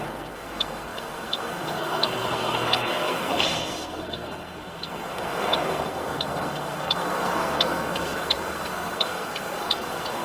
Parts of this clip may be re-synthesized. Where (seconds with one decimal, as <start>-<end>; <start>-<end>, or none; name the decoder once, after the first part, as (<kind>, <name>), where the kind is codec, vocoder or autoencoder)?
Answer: 0.0-10.2 (codec, SNAC)